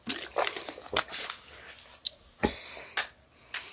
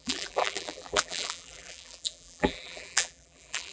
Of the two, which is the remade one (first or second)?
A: second